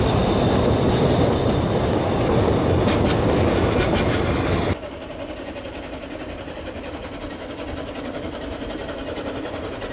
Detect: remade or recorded recorded